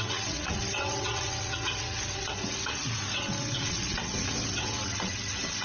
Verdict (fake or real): fake